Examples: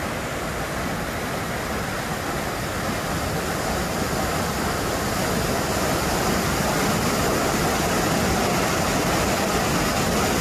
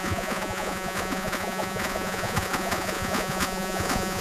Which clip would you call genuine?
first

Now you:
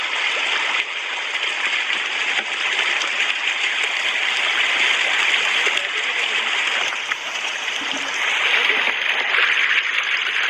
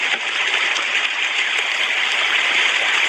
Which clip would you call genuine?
first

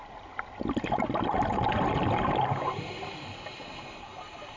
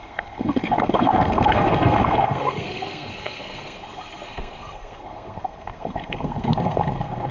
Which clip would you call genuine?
first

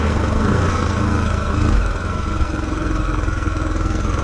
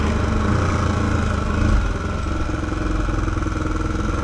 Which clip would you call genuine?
second